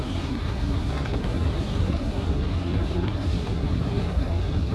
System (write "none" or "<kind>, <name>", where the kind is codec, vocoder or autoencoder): codec, SNAC